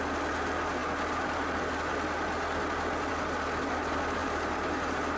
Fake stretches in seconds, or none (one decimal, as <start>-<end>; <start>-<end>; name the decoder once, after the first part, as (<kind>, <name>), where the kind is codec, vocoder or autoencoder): 4.2-5.2 (vocoder, BigVGAN v2)